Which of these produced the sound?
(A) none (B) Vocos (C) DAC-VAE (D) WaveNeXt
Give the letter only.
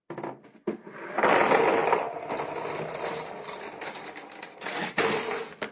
A